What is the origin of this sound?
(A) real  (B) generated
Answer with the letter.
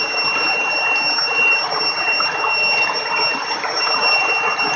A